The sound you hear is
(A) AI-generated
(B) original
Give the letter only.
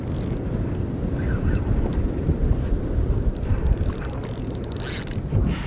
B